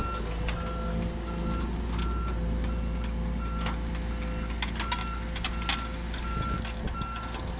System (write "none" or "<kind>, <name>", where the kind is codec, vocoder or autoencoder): none